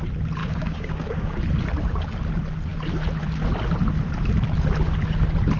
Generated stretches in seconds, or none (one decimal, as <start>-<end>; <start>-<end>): 0.4-1.4